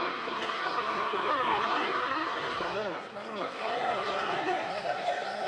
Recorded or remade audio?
remade